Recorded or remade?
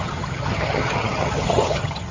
remade